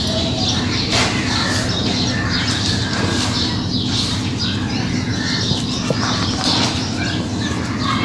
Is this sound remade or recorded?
recorded